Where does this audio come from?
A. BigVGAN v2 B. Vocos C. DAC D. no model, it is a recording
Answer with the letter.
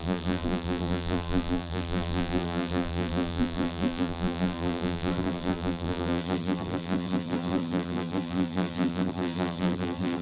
A